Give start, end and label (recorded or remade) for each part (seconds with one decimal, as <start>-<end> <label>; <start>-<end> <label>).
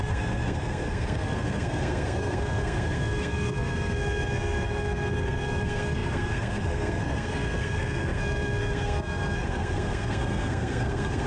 0.0-11.3 remade